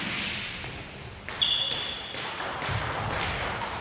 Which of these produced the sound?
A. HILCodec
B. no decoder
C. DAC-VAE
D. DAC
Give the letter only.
B